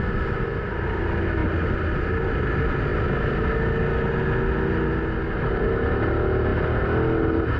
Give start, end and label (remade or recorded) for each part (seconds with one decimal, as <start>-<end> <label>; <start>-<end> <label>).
0.0-7.6 recorded